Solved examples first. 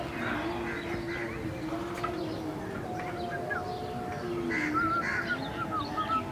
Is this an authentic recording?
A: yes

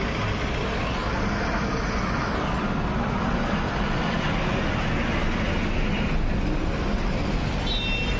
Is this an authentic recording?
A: yes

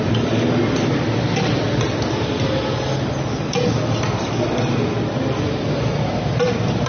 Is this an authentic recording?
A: yes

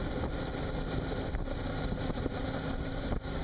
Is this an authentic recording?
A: yes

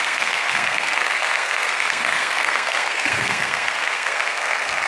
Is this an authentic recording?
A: no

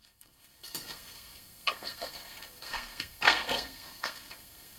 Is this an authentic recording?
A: no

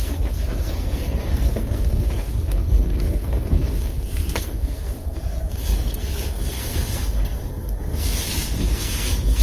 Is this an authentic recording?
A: no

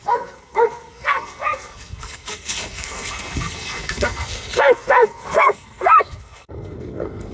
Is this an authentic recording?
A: no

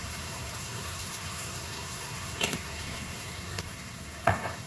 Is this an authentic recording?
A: no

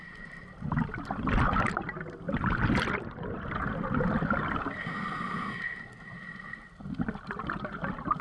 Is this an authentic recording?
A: yes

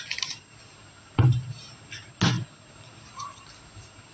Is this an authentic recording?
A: yes